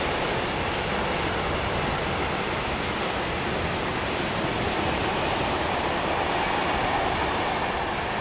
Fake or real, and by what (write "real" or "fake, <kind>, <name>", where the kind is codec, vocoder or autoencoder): real